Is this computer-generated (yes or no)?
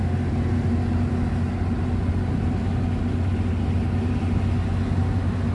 no